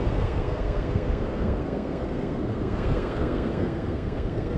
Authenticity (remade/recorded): remade